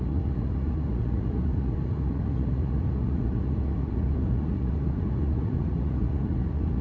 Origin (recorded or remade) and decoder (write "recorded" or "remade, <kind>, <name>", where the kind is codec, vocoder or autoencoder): remade, vocoder, Vocos